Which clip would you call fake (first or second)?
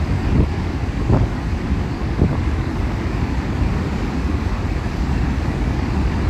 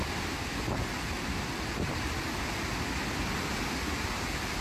first